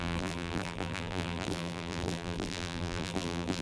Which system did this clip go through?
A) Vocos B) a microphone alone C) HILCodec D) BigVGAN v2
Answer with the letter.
D